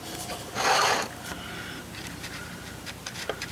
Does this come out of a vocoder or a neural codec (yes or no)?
no